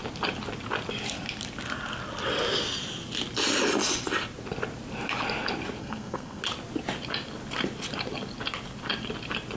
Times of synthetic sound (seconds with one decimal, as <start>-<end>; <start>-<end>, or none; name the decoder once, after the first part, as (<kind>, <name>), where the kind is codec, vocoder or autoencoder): 5.8-6.4 (codec, SNAC)